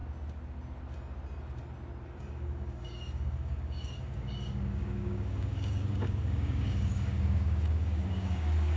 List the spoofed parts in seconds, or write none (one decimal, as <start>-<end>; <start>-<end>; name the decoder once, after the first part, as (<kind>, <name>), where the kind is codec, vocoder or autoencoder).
2.2-8.8 (codec, DAC)